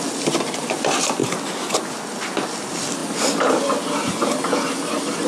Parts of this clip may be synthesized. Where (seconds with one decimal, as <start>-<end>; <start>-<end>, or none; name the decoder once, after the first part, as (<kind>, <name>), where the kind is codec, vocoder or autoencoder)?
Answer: none